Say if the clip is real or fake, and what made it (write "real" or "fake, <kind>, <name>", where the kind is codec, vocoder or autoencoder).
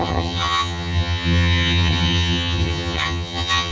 fake, vocoder, HiFi-GAN